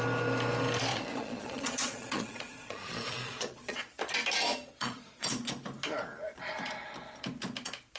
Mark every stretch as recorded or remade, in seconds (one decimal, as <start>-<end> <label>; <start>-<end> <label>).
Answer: 0.0-0.9 recorded; 0.9-4.0 remade; 4.0-4.5 recorded; 4.5-5.3 remade; 5.3-8.0 recorded